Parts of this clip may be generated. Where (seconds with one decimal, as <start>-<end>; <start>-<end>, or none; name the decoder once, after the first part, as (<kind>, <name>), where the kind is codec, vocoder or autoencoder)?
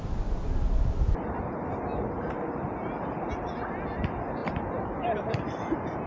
2.8-3.3 (vocoder, BigVGAN v2); 4.4-5.6